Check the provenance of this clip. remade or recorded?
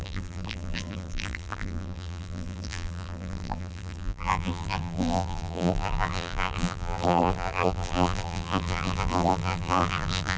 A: remade